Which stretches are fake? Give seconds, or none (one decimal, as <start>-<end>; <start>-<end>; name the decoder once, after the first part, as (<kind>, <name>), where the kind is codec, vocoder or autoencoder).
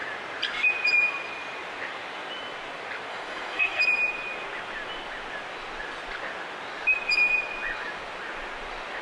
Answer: 3.1-3.8 (codec, SNAC)